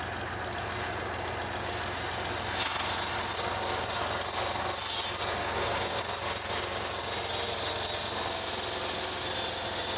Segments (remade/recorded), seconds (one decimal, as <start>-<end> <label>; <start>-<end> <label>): 0.0-5.4 recorded; 5.4-6.0 remade; 6.0-10.0 recorded